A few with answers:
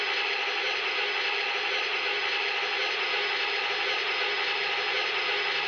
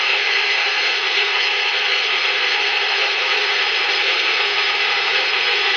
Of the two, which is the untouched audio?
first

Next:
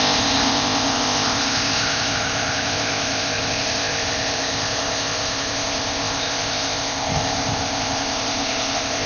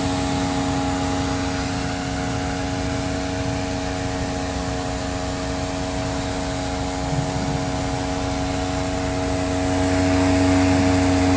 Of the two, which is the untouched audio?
second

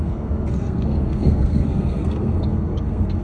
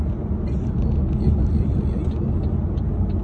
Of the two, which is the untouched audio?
second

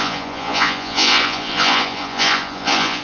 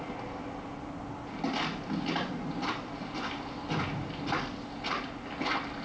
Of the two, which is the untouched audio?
second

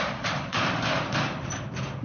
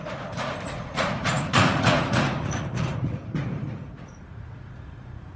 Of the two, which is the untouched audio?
first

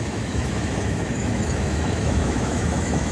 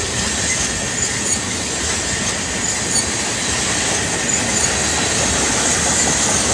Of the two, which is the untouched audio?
second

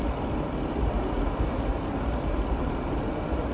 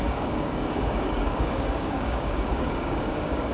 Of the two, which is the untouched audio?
first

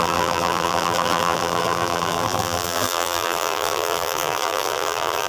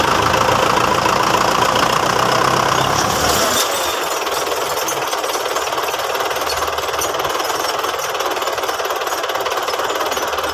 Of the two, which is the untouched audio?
second